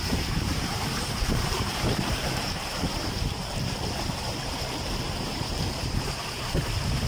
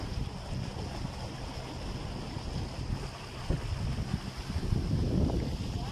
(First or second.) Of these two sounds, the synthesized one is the first